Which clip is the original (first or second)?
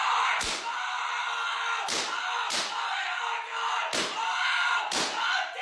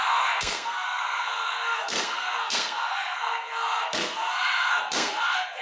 first